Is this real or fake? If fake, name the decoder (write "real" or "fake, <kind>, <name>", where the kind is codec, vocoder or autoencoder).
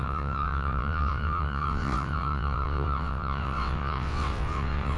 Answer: fake, vocoder, WaveNeXt